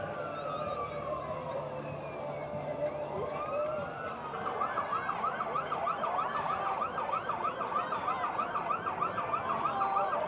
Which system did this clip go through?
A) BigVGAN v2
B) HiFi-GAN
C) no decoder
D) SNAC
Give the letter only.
C